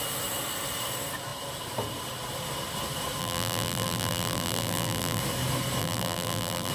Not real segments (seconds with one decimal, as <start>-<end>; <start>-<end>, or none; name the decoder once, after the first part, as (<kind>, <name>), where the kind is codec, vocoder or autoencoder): 3.2-5.2 (vocoder, BigVGAN v2); 5.8-6.7